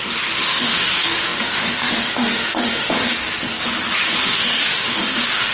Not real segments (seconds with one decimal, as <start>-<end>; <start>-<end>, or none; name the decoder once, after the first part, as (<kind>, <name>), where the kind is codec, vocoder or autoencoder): 0.0-3.0 (autoencoder, DAC-VAE); 4.2-5.5